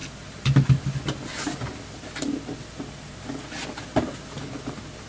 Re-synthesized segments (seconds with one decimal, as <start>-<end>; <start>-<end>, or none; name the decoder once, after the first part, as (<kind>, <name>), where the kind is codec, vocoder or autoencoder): none